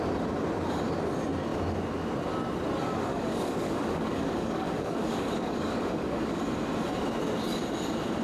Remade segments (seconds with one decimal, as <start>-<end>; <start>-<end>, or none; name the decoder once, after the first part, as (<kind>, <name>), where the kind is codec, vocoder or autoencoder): 3.1-6.4 (codec, DAC)